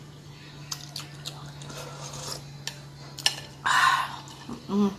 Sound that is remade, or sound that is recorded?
recorded